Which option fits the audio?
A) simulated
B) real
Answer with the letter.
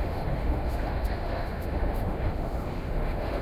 A